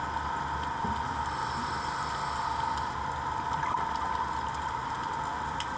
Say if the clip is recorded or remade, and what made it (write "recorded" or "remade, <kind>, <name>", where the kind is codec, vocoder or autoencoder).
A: recorded